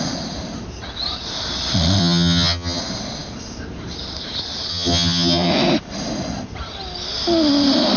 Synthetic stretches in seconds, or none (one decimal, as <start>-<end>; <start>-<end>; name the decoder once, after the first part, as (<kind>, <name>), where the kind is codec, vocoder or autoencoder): 2.0-2.8 (vocoder, HiFi-GAN); 4.7-5.5